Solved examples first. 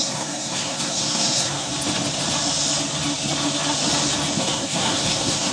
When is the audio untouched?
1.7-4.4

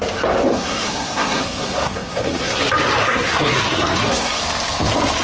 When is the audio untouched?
0.0-0.5; 2.6-3.0; 4.4-5.2

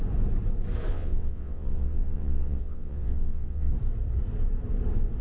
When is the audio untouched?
0.0-0.9; 3.7-5.2

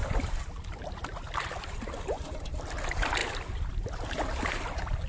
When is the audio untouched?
0.0-5.1

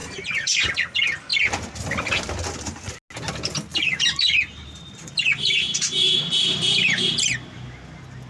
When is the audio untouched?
0.7-3.7; 7.3-8.3

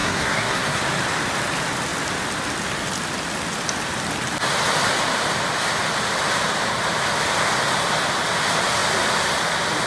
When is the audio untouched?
0.8-9.9

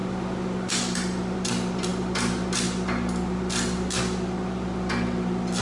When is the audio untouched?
0.0-0.7; 1.9-5.6

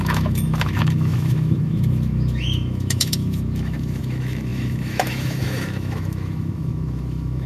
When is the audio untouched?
none